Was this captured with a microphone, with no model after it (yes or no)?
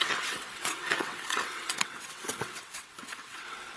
no